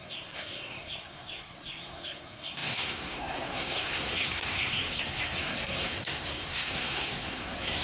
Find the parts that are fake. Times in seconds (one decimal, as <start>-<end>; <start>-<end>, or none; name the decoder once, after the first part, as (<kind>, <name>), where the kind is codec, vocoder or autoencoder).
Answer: 0.0-7.8 (codec, SNAC)